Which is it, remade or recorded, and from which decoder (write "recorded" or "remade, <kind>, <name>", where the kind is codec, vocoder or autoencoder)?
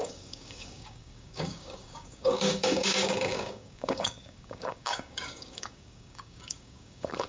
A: remade, codec, DAC